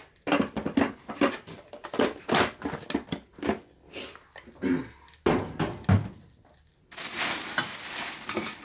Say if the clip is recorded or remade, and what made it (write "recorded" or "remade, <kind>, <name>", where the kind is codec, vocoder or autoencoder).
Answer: recorded